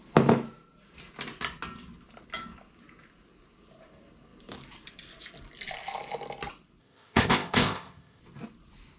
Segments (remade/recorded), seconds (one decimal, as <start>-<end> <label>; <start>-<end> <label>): 0.0-6.8 recorded; 6.8-8.2 remade; 8.2-9.0 recorded